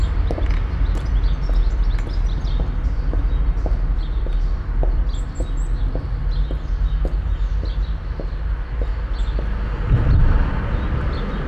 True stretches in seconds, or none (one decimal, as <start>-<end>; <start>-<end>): 0.0-11.5